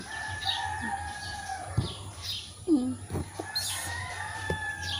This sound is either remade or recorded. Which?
recorded